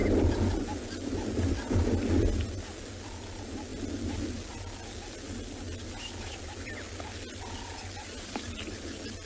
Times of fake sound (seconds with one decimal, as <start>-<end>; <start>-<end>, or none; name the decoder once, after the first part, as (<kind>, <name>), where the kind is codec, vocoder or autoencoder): none